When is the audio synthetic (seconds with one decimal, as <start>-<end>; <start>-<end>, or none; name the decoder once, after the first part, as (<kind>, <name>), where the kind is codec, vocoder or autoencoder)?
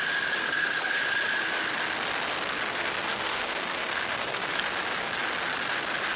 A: 0.4-1.0 (codec, SNAC); 2.8-4.6